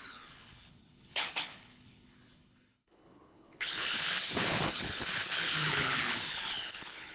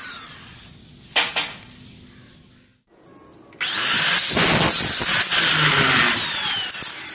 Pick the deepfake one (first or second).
first